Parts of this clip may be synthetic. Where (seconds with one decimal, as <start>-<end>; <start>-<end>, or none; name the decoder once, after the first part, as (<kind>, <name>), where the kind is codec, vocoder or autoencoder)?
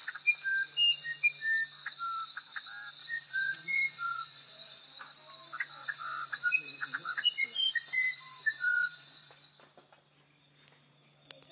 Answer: 3.0-4.8 (vocoder, Vocos); 5.8-9.3